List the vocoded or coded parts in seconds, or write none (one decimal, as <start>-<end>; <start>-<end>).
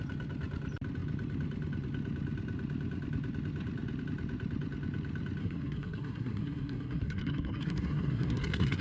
5.4-8.8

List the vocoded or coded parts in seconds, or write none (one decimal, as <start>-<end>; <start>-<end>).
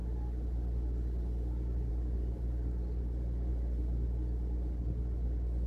none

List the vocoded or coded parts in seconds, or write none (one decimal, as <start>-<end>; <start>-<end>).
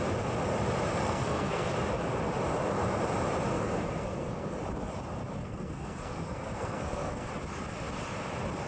0.9-1.7; 3.5-4.6; 5.4-7.3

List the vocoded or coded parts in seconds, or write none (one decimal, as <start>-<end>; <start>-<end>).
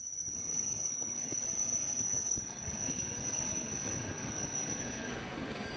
0.0-5.8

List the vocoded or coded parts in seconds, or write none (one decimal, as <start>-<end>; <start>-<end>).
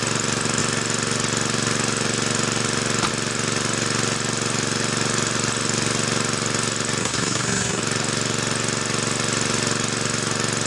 7.0-7.8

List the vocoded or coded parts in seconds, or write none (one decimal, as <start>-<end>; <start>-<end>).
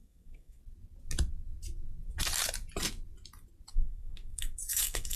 0.0-0.6; 3.7-5.2